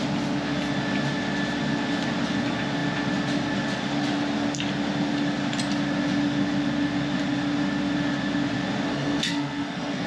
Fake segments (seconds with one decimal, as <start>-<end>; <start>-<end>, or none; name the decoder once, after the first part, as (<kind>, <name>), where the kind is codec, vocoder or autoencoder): 8.9-10.1 (codec, SNAC)